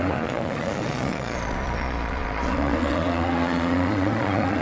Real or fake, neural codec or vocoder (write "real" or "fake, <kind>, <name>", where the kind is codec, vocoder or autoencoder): fake, vocoder, Vocos